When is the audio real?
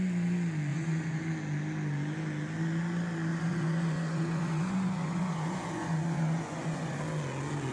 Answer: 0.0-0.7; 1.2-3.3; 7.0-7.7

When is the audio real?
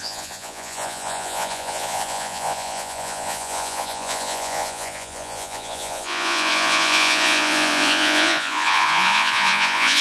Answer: none